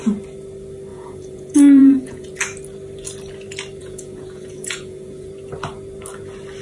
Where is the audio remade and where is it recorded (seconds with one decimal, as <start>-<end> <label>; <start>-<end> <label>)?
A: 0.0-0.9 recorded; 0.9-2.4 remade; 2.4-3.8 recorded; 3.8-5.3 remade; 5.3-6.6 recorded